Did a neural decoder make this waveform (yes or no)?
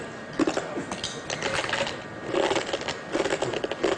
no